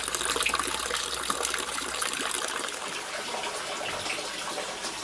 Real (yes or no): yes